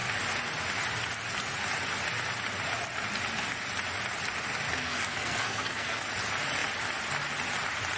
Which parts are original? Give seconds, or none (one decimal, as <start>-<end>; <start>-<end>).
0.0-4.7; 6.0-8.0